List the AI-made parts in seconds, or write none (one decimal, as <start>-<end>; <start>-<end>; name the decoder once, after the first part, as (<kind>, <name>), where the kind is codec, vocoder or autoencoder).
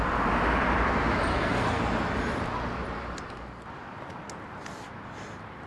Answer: 1.3-1.8 (codec, SNAC)